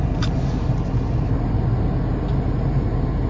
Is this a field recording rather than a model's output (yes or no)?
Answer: yes